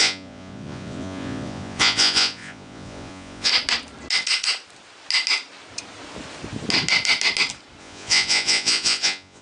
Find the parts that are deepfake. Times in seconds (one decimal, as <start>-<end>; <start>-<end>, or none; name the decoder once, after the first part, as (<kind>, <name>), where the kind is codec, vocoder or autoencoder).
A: 0.0-3.5 (vocoder, Vocos); 7.8-9.4